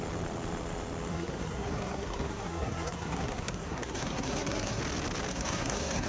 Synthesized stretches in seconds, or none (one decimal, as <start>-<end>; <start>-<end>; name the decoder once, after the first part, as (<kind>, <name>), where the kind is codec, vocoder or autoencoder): 1.1-4.8 (codec, SNAC); 5.3-6.1